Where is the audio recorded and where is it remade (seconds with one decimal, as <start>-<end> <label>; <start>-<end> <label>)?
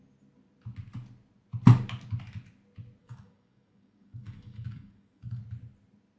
0.0-3.0 recorded; 3.0-5.4 remade; 5.4-6.2 recorded